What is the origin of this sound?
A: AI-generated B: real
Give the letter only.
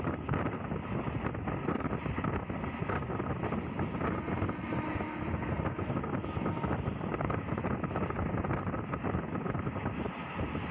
B